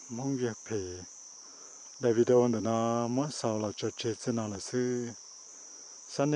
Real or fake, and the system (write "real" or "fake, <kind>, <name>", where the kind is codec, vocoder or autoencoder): fake, vocoder, BigVGAN v2